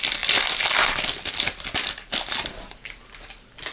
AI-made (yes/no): yes